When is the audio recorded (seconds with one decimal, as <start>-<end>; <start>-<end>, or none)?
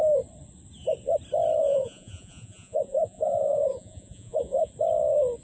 0.0-1.6; 4.7-5.4